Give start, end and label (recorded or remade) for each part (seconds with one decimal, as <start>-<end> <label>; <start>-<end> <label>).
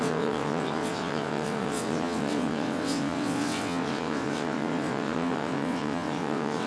0.0-6.7 remade